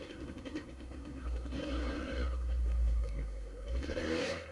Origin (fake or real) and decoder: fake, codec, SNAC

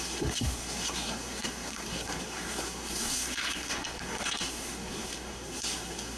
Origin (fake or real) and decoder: fake, codec, SNAC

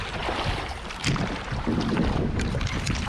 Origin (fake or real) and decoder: real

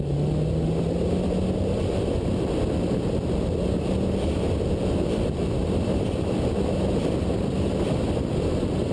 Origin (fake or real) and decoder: real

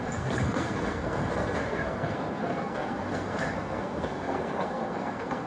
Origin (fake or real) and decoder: fake, codec, SNAC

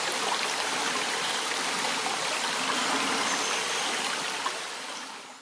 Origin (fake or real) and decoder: real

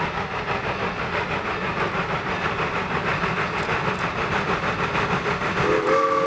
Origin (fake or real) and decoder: real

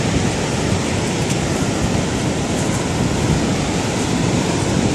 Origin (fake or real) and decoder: real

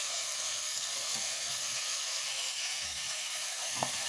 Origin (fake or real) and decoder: fake, codec, SNAC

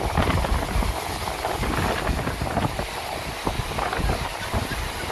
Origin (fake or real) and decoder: real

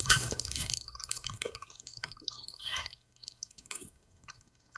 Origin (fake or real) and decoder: fake, codec, SNAC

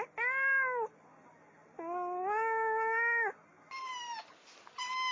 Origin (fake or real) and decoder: real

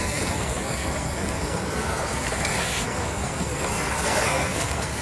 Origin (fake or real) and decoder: fake, codec, SNAC